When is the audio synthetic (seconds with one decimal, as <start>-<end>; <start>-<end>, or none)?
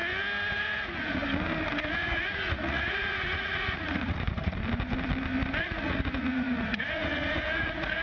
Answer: 0.5-1.2; 1.9-4.5; 5.6-8.0